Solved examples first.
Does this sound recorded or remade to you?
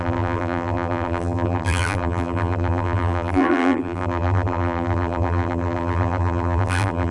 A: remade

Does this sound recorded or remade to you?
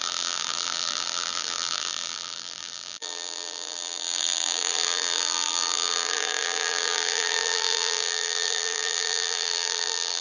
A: remade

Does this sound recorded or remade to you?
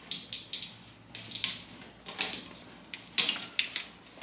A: recorded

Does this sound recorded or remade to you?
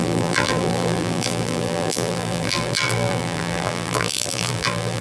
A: remade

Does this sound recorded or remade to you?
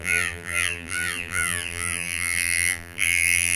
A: remade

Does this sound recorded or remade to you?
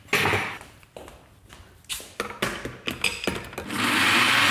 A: recorded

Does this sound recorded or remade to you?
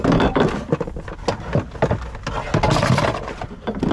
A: recorded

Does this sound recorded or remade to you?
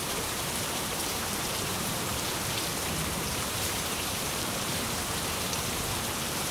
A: remade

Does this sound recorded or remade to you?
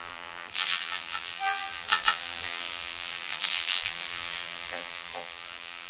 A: remade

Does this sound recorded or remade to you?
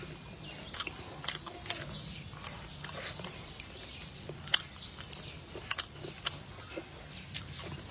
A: recorded